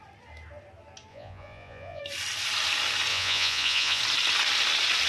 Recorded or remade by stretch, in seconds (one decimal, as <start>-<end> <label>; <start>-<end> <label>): 0.0-1.1 recorded; 1.1-2.0 remade; 2.0-3.1 recorded; 3.1-4.0 remade; 4.0-5.1 recorded